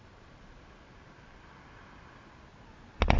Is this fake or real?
real